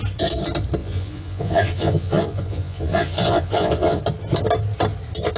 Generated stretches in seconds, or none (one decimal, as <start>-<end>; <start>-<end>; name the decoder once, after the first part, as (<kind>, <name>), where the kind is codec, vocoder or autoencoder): 0.8-4.0 (vocoder, Vocos)

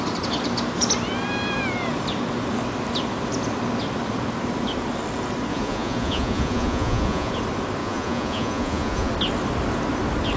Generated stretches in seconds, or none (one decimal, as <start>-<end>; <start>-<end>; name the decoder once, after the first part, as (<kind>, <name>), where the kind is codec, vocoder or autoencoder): 5.5-7.3 (vocoder, Vocos); 7.8-9.1

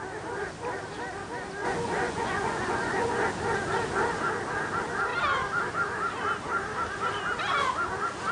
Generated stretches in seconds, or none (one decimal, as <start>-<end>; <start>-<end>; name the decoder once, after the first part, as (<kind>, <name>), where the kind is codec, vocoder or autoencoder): 1.6-3.3 (vocoder, Vocos)